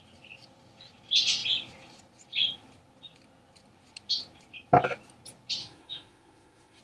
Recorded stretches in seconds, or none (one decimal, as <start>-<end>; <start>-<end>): 0.0-5.6

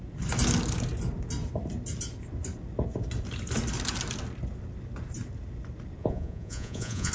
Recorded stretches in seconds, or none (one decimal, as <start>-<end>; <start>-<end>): 0.0-6.0

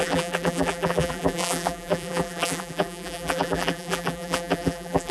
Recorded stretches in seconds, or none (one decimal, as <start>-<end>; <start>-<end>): none

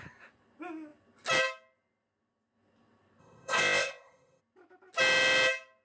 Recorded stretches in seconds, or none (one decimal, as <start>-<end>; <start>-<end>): 0.0-3.2; 4.4-5.8

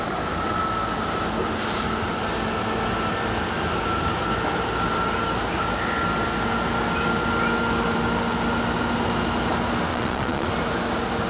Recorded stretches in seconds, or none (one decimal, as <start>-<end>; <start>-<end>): 0.0-9.9; 10.5-11.3

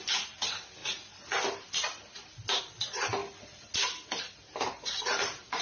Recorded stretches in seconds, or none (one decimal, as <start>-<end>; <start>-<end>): 0.0-5.6

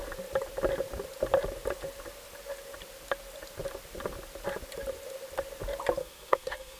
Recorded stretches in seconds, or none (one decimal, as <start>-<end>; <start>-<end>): 0.0-6.0